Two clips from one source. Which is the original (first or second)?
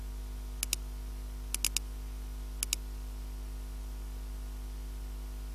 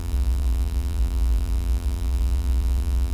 first